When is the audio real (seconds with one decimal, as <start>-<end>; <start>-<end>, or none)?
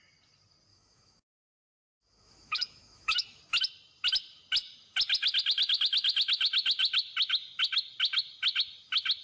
0.0-0.7; 3.4-9.2